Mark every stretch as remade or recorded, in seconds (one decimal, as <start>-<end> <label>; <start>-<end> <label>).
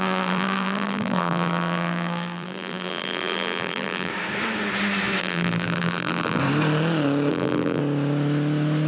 0.0-4.1 remade; 4.1-5.2 recorded; 5.2-6.4 remade; 6.4-7.3 recorded; 7.3-7.8 remade; 7.8-8.9 recorded